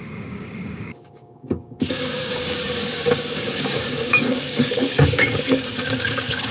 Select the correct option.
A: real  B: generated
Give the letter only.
B